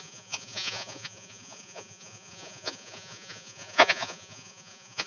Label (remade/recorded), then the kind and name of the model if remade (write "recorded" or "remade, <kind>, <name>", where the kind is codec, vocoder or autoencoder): remade, vocoder, Vocos